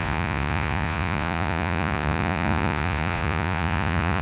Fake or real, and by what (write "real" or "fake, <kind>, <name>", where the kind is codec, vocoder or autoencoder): fake, vocoder, Vocos